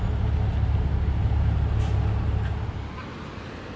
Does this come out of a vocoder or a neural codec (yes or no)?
no